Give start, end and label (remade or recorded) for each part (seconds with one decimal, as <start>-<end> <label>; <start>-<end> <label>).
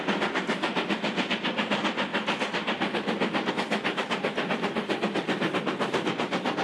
0.0-6.6 recorded